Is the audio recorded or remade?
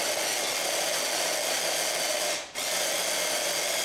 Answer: recorded